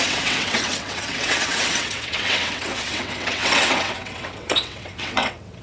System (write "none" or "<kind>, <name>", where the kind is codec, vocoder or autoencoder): vocoder, WaveNeXt